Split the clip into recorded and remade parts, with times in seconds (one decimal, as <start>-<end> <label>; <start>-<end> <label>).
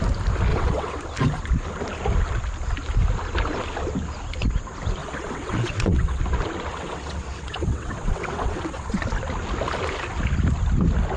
0.0-0.5 recorded; 0.5-1.0 remade; 1.0-5.0 recorded; 5.0-6.2 remade; 6.2-6.7 recorded; 6.7-9.0 remade; 9.0-11.2 recorded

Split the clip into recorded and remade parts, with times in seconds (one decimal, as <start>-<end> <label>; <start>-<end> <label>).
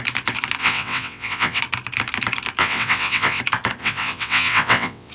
0.0-0.6 recorded; 0.6-1.6 remade; 1.6-2.6 recorded; 2.6-3.4 remade; 3.4-3.8 recorded; 3.8-5.1 remade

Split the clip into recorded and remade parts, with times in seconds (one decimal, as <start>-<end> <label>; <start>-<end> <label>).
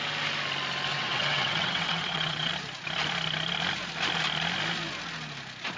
0.0-0.9 recorded; 0.9-2.5 remade; 2.5-5.8 recorded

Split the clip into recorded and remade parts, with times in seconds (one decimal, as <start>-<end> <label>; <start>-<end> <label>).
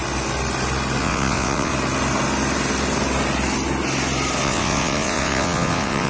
0.0-1.0 recorded; 1.0-1.7 remade; 1.7-4.4 recorded; 4.4-6.1 remade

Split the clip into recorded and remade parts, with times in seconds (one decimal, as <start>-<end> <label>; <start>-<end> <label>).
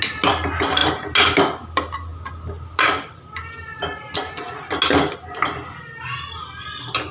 0.0-7.1 recorded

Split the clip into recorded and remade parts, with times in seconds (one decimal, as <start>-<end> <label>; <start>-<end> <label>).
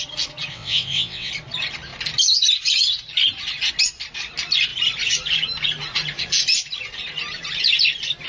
0.0-0.5 recorded; 0.5-1.3 remade; 1.3-8.3 recorded